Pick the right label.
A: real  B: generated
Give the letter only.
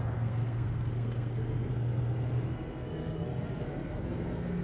B